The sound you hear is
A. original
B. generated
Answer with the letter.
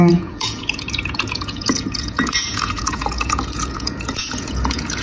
B